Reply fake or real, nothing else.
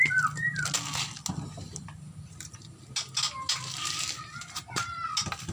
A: real